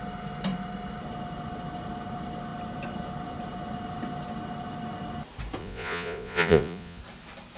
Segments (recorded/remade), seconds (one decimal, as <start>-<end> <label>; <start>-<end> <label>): 0.0-5.6 recorded; 5.6-7.0 remade; 7.0-7.6 recorded

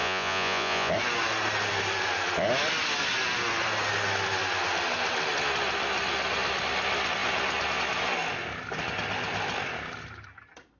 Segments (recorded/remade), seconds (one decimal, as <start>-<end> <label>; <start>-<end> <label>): 0.0-0.9 remade; 0.9-10.8 recorded

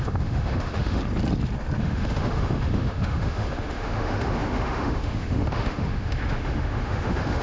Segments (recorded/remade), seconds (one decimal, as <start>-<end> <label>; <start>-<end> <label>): 0.0-1.0 remade; 1.0-1.8 recorded; 1.8-7.4 remade

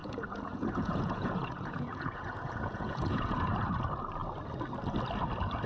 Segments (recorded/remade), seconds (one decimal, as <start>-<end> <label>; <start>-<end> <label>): 0.0-3.4 remade; 3.4-5.7 recorded

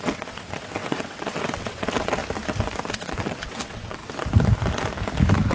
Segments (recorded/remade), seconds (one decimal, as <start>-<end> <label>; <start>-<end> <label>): 0.0-2.2 remade; 2.2-2.9 recorded; 2.9-4.0 remade; 4.0-5.5 recorded

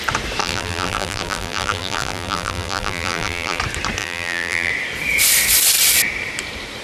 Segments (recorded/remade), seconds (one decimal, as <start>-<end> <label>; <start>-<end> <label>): 0.0-0.4 recorded; 0.4-3.6 remade; 3.6-4.0 recorded; 4.0-4.7 remade; 4.7-6.8 recorded

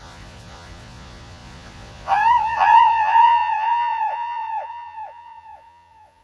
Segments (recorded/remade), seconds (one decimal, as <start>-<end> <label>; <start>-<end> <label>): 0.0-6.2 remade